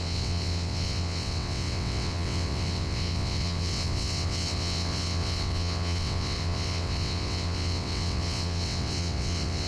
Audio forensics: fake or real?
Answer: fake